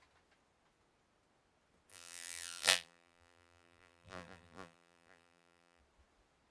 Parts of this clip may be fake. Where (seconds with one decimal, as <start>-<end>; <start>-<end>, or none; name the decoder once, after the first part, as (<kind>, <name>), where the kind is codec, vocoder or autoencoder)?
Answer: 1.9-5.8 (vocoder, BigVGAN v2)

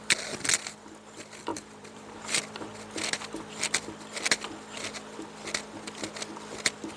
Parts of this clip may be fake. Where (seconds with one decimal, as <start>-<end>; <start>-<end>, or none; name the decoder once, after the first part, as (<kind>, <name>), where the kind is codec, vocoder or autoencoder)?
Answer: 1.5-2.4 (vocoder, BigVGAN v2)